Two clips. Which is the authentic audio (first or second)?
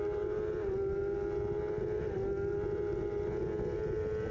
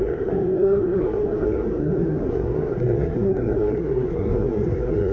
first